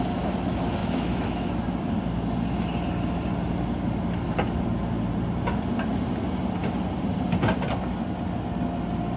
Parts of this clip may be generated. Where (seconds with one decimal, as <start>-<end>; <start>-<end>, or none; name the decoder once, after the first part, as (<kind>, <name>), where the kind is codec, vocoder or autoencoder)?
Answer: 0.8-1.5 (autoencoder, DAC-VAE)